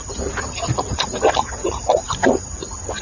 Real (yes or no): yes